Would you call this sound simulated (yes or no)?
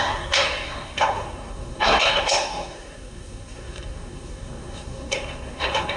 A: yes